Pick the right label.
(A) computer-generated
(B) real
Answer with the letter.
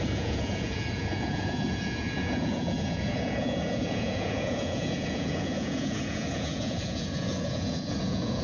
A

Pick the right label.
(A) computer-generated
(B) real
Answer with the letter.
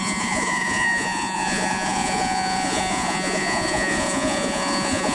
A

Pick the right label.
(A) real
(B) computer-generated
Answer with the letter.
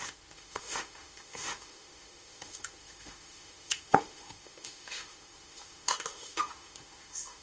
B